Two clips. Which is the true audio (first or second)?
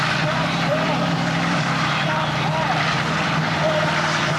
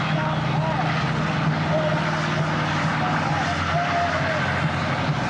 second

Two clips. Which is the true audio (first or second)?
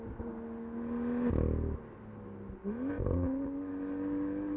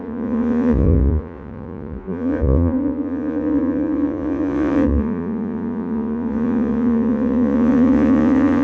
first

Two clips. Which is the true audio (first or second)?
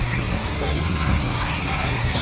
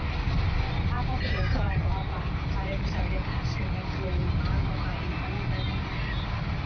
second